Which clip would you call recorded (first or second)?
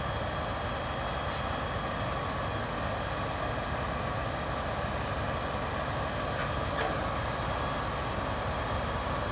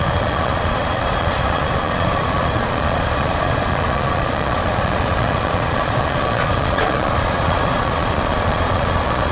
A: first